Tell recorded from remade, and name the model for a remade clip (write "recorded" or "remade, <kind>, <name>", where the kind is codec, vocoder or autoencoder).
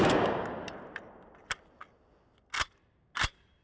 recorded